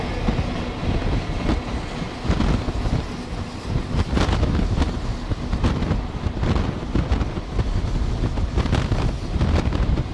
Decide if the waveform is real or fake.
real